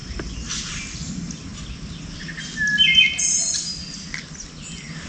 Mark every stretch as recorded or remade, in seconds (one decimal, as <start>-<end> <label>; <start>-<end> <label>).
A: 0.0-5.1 recorded